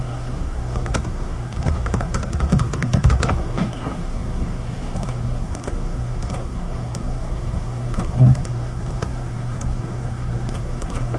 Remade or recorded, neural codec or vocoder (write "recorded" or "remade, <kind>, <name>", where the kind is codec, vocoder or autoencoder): remade, codec, SNAC